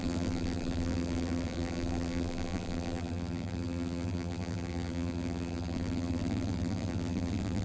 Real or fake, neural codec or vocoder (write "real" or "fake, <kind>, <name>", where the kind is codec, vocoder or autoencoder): fake, vocoder, BigVGAN v2